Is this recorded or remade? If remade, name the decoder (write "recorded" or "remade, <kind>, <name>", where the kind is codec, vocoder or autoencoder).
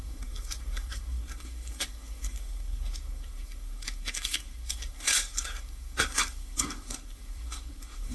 remade, codec, SNAC